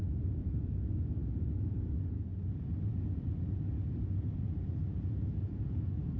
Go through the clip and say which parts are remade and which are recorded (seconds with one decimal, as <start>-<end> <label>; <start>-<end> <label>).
0.0-2.3 remade; 2.3-5.0 recorded; 5.0-6.2 remade

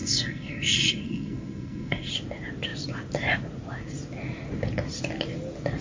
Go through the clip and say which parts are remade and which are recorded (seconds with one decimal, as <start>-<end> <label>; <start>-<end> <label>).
0.0-2.1 remade; 2.1-5.8 recorded